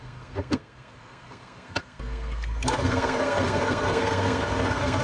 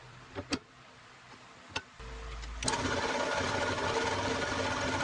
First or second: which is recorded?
second